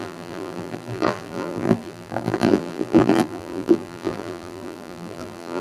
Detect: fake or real fake